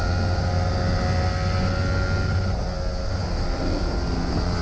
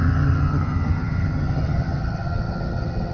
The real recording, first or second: first